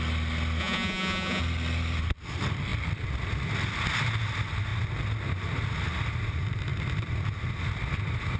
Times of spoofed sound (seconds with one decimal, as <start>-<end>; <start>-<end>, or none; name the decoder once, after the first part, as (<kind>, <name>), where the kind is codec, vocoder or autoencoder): 0.6-1.4 (vocoder, Vocos)